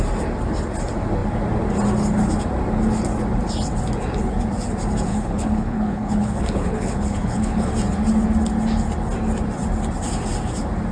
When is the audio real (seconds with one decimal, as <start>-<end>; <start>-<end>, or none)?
0.0-5.1; 7.7-10.9